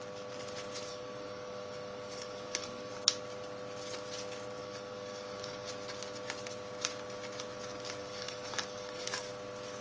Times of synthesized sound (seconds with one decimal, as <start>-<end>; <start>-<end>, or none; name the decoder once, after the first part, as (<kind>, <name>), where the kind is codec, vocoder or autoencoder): 0.9-2.9 (codec, DAC); 4.6-5.7; 8.0-9.3